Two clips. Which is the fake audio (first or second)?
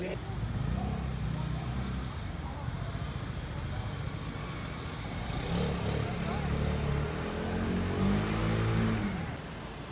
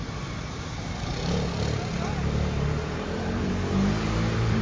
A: second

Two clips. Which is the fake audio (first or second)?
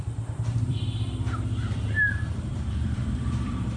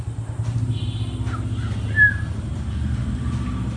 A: first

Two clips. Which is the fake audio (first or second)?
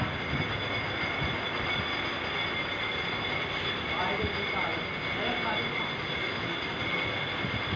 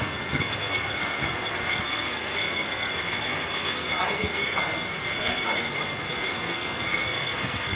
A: second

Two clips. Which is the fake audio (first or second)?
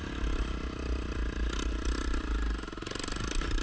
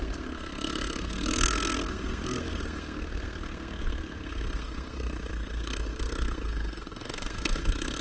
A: second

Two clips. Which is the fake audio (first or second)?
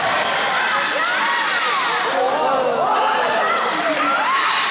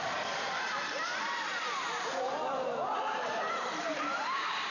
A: second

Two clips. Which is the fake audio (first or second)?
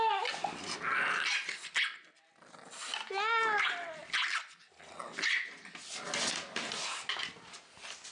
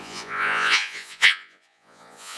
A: second